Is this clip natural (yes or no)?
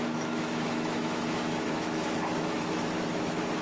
no